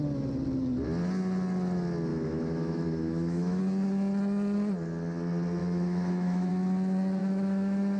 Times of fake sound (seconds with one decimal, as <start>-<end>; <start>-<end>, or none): 2.1-3.6; 5.6-6.5; 7.2-8.0